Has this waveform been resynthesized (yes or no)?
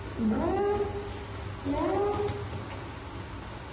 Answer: no